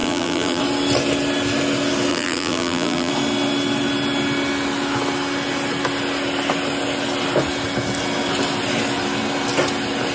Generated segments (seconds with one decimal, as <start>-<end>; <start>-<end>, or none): 0.0-0.6; 2.1-3.1